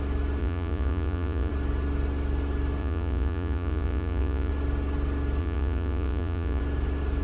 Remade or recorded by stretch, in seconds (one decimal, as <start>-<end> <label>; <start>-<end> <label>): 0.0-0.4 recorded; 0.4-1.5 remade; 1.5-2.8 recorded; 2.8-4.5 remade; 4.5-5.4 recorded; 5.4-6.6 remade; 6.6-7.2 recorded